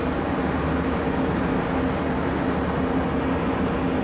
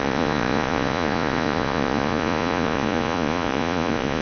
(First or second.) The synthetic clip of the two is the second